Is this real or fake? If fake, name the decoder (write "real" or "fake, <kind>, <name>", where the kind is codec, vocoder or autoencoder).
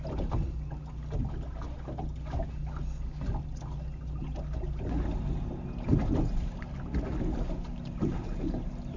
real